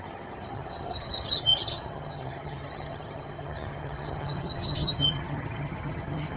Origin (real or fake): fake